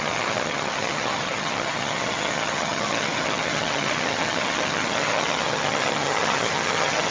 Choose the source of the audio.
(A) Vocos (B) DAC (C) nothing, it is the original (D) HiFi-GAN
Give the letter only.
D